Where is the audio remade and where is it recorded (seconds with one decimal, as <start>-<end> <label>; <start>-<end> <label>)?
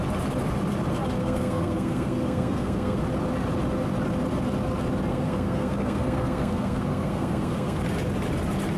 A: 0.0-1.2 recorded; 1.2-3.0 remade; 3.0-5.1 recorded; 5.1-7.8 remade; 7.8-8.8 recorded